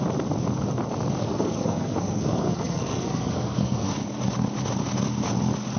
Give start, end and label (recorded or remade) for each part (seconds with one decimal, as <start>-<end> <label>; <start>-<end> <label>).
0.0-1.2 recorded; 1.2-3.9 remade; 3.9-5.8 recorded